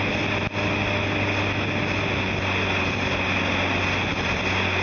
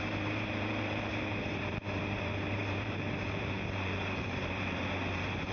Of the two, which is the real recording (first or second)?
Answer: first